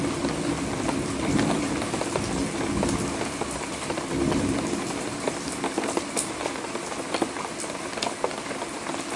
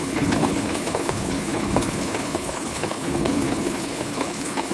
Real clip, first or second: first